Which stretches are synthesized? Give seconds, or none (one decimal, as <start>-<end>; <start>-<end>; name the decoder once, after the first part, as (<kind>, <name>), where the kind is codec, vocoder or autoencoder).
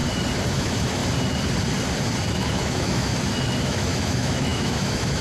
0.5-1.0 (autoencoder, DAC-VAE); 2.3-3.1; 3.6-5.2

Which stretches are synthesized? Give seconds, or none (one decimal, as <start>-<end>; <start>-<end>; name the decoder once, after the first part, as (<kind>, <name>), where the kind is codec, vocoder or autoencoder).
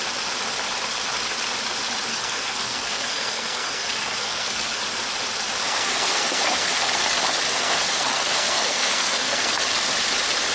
2.1-4.8 (codec, SNAC); 5.6-7.0; 7.5-9.6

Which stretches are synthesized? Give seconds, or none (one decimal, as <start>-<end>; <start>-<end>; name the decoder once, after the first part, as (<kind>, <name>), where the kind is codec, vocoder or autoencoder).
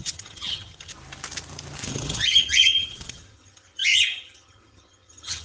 0.0-0.9 (vocoder, HiFi-GAN); 1.9-5.4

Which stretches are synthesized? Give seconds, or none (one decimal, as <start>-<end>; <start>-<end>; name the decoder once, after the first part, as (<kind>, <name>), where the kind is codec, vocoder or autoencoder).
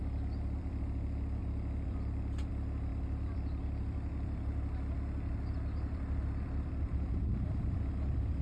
0.0-0.8 (vocoder, BigVGAN v2); 1.4-2.5; 2.9-6.7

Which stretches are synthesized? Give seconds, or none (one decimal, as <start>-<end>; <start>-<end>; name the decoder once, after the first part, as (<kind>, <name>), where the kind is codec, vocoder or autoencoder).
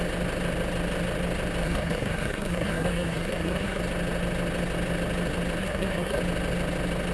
1.6-3.8 (codec, SNAC); 5.6-6.2